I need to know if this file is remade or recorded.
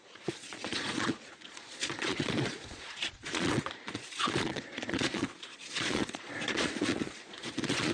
remade